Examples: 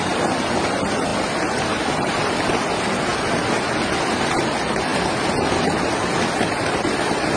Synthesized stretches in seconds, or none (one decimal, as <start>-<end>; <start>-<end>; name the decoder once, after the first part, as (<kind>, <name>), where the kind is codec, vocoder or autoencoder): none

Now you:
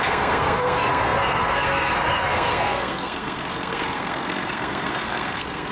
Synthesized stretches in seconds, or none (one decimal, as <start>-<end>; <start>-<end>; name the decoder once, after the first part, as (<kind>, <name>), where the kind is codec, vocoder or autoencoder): 0.0-5.7 (codec, SNAC)

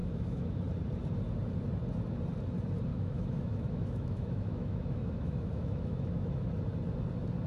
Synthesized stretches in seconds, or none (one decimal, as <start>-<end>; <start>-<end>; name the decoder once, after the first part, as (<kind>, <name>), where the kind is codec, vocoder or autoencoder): 0.0-0.6 (autoencoder, DAC-VAE); 2.9-6.5

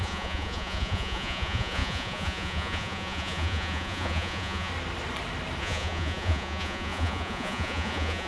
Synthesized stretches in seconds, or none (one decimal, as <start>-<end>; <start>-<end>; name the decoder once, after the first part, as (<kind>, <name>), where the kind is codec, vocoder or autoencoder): 0.0-4.7 (vocoder, Vocos); 5.6-8.3

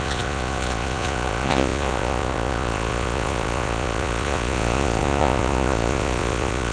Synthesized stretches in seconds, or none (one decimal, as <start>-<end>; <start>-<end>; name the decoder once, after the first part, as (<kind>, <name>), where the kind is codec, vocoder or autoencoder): 0.0-6.7 (vocoder, Vocos)

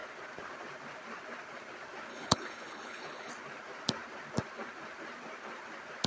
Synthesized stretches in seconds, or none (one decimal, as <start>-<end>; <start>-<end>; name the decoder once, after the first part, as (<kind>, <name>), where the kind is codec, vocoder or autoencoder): 2.1-3.3 (codec, HILCodec)

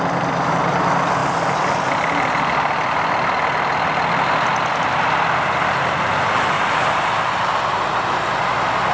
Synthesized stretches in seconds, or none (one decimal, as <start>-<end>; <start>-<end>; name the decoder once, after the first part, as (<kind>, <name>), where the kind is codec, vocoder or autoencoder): 6.1-6.7 (vocoder, BigVGAN v2)

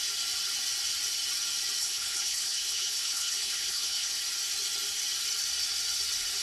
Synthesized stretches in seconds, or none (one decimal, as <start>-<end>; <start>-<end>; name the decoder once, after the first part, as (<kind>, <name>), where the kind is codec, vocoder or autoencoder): 1.8-4.2 (codec, HILCodec)